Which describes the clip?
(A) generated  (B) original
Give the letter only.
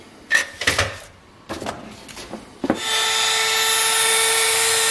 B